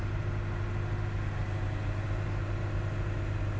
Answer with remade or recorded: recorded